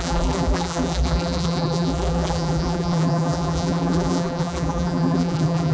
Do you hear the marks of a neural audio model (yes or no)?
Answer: yes